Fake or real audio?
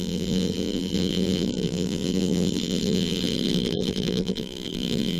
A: fake